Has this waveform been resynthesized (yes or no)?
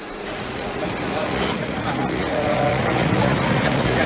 yes